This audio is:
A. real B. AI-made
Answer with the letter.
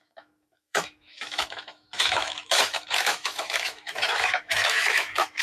B